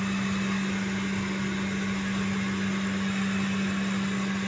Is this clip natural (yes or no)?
yes